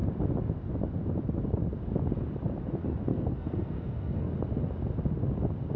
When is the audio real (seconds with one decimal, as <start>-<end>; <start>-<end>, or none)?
0.0-3.1; 4.3-5.8